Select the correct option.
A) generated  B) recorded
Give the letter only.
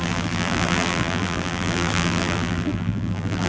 A